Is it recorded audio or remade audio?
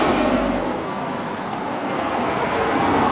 remade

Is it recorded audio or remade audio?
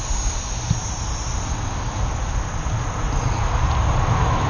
recorded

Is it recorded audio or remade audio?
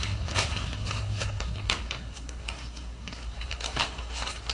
remade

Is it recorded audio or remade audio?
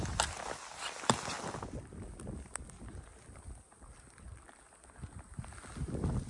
recorded